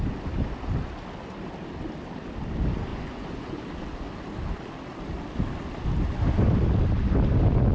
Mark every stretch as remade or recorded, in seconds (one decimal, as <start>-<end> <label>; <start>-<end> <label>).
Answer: 0.0-2.9 recorded; 2.9-3.6 remade; 3.6-7.7 recorded